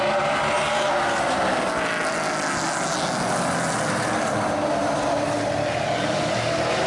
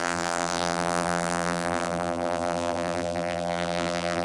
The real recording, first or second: first